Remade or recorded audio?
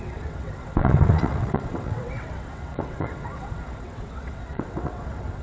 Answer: remade